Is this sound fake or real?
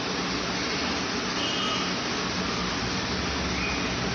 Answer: real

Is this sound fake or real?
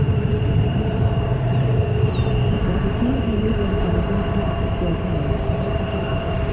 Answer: fake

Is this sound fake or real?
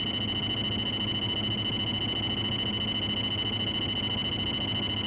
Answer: real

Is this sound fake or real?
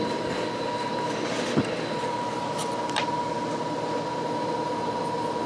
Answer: real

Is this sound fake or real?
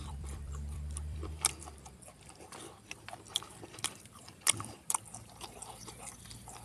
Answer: fake